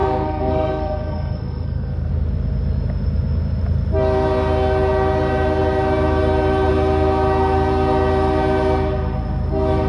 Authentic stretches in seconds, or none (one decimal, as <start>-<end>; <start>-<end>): 2.1-9.9